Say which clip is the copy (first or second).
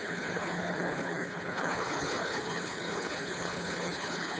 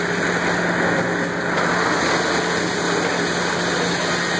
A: first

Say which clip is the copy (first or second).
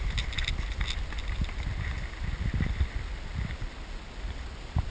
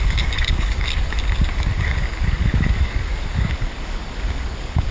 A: second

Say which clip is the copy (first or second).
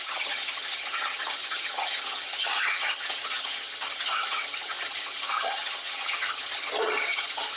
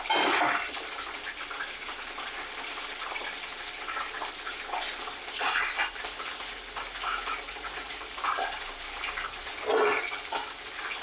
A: first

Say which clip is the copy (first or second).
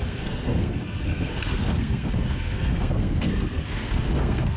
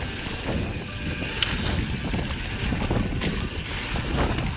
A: first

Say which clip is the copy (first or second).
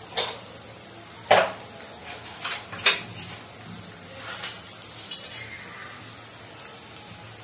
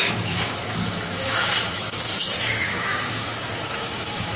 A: second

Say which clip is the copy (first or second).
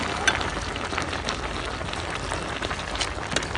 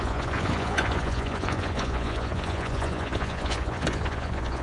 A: second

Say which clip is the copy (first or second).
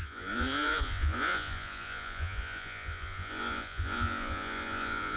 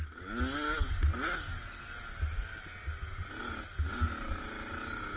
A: first